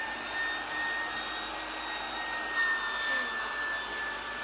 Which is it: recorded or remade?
recorded